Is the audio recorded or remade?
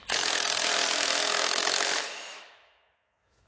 remade